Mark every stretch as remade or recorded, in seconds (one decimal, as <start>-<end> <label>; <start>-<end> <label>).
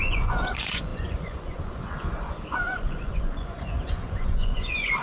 0.0-5.0 remade